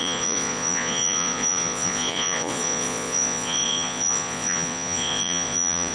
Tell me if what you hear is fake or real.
fake